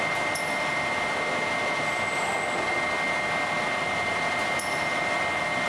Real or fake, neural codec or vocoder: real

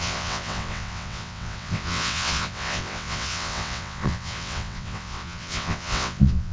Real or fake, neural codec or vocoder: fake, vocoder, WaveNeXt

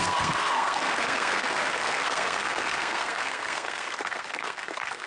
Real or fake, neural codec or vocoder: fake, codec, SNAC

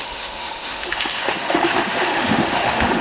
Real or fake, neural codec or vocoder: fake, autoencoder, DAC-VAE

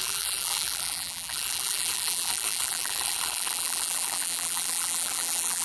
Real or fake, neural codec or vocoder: fake, vocoder, BigVGAN v2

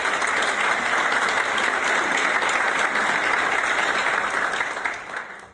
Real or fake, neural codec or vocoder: real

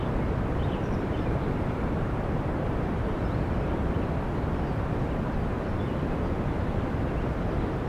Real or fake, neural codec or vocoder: real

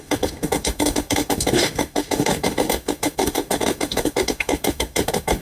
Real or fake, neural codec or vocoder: fake, autoencoder, DAC-VAE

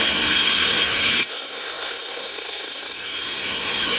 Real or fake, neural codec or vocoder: fake, codec, SNAC